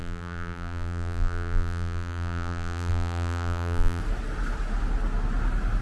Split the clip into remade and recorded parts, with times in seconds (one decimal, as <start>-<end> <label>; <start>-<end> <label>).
0.0-4.0 remade; 4.0-5.8 recorded